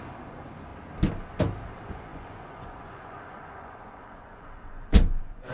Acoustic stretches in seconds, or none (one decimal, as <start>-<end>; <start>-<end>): 0.7-1.7